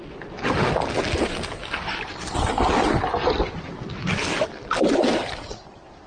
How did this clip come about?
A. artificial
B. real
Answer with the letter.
B